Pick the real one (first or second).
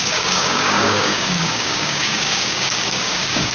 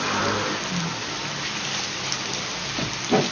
second